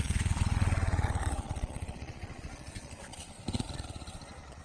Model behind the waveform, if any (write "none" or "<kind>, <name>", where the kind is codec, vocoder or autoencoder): vocoder, Vocos